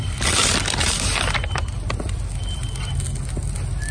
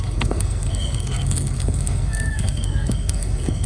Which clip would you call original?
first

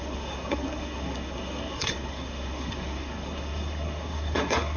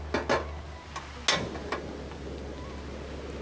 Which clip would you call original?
second